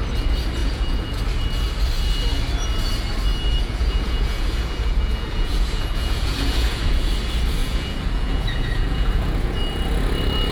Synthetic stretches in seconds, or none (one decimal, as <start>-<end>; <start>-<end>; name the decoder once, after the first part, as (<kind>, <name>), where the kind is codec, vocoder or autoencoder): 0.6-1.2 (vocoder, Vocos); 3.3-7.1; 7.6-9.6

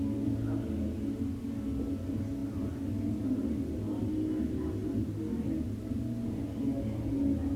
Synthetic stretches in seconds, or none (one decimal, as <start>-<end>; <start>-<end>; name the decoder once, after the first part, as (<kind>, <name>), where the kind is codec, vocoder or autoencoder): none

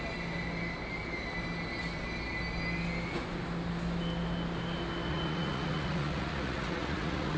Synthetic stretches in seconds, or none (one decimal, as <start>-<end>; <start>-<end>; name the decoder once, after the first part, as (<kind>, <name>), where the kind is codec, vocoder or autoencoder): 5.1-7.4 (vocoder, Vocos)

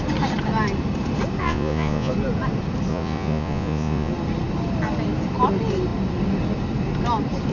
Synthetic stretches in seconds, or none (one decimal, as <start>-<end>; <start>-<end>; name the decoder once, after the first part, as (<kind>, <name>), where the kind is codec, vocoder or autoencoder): 1.4-2.1 (vocoder, Vocos); 2.9-4.1

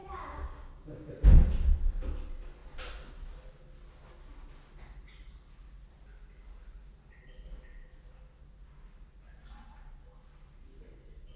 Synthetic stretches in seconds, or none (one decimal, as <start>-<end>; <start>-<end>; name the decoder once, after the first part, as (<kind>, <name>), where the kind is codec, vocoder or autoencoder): 0.0-1.1 (codec, DAC)

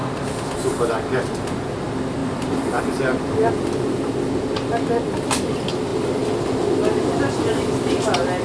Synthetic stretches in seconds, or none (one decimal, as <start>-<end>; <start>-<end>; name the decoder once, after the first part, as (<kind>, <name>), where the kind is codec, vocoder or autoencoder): 2.2-2.8 (vocoder, BigVGAN v2)

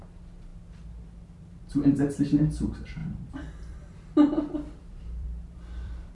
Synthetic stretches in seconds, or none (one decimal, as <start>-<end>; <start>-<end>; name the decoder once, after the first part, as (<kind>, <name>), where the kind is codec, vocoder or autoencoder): 3.0-6.1 (vocoder, BigVGAN v2)